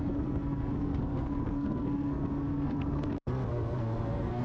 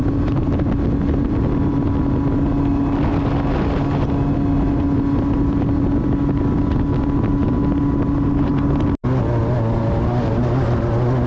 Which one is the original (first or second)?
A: second